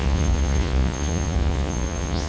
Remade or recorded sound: remade